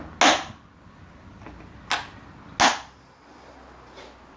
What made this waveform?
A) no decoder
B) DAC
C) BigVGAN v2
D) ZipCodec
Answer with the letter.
A